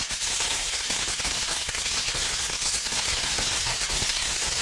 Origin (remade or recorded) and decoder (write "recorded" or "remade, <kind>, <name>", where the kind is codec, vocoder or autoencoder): remade, codec, SNAC